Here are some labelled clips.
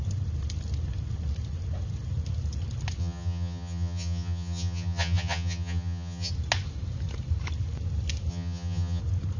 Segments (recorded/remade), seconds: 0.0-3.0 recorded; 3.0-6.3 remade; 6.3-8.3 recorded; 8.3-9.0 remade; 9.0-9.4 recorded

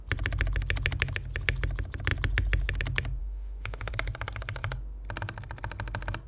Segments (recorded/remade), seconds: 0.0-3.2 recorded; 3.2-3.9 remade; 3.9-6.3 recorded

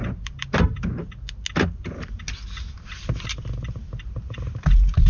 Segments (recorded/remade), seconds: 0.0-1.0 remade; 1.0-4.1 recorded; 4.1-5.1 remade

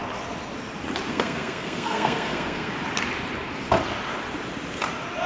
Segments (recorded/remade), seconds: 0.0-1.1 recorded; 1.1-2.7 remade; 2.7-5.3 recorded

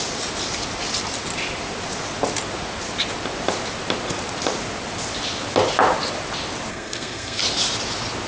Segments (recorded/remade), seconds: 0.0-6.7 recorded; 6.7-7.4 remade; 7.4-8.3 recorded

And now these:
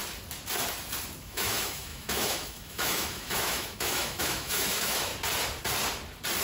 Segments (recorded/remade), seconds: 0.0-1.2 recorded; 1.2-5.1 remade; 5.1-6.4 recorded